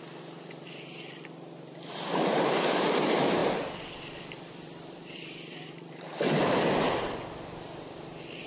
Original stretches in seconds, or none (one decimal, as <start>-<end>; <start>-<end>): 0.0-3.4; 6.2-8.5